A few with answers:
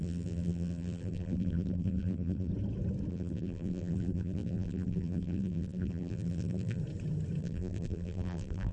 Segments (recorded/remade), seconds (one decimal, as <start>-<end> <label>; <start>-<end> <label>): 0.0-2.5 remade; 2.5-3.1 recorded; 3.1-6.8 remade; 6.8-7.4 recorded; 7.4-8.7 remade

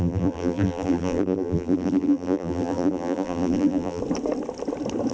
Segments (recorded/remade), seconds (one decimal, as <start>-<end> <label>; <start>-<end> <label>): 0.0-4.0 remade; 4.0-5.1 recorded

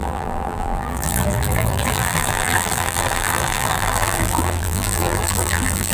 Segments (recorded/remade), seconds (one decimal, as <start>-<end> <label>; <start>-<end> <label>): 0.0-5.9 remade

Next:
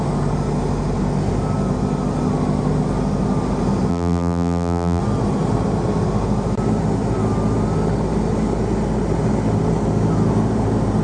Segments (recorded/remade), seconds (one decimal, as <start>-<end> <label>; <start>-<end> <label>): 0.0-3.9 recorded; 3.9-5.0 remade; 5.0-11.0 recorded

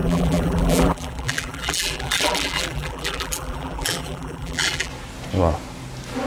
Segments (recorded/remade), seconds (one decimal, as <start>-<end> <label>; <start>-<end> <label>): 0.0-4.9 remade; 4.9-6.3 recorded